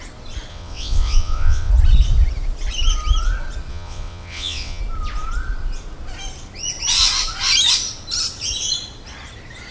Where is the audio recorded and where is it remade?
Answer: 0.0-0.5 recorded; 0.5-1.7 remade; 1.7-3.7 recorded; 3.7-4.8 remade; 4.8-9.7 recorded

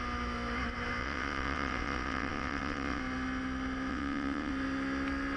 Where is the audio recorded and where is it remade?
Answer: 0.0-1.0 recorded; 1.0-3.0 remade; 3.0-3.9 recorded; 3.9-4.5 remade; 4.5-5.4 recorded

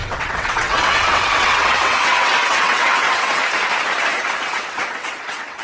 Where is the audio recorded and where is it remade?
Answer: 0.0-3.4 remade; 3.4-4.1 recorded; 4.1-5.6 remade

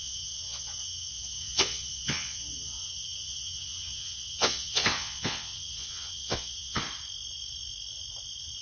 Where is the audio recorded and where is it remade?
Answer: 0.0-6.8 remade; 6.8-8.6 recorded

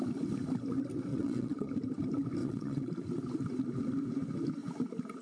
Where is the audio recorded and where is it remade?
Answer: 0.0-1.1 recorded; 1.1-1.7 remade; 1.7-2.4 recorded; 2.4-2.9 remade; 2.9-5.2 recorded